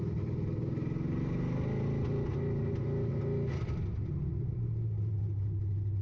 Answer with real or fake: real